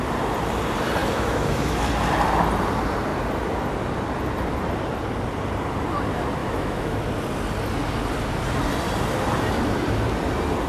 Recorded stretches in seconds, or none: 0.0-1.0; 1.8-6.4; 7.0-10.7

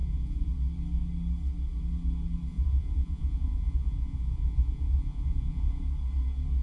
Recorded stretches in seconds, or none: 0.5-2.5; 5.8-6.6

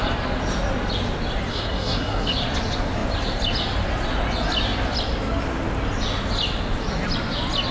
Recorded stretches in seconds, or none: 0.0-1.5; 2.3-7.7

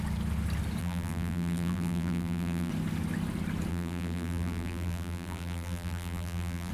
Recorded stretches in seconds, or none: 0.0-0.8; 2.7-3.7

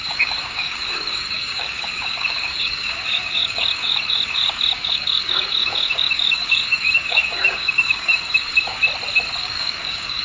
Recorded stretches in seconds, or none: 8.8-9.4

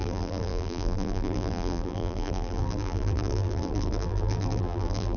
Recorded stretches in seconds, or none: none

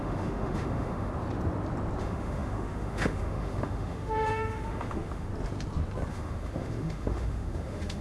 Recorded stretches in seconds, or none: 1.1-2.0; 5.3-6.1

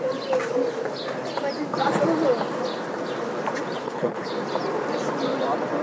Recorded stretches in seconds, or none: 0.0-3.8; 4.3-5.8